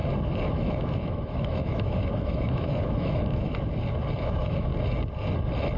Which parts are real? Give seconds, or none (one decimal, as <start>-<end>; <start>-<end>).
0.0-0.5; 3.5-4.2; 4.7-5.8